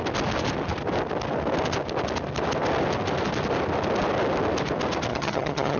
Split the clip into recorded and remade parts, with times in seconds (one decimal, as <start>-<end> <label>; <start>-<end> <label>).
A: 0.0-5.1 recorded; 5.1-5.8 remade